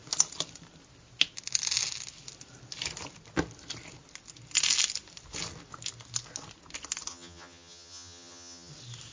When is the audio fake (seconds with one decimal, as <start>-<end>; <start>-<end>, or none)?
7.1-8.7